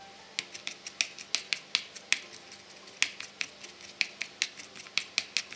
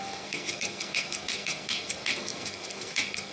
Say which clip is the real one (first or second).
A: first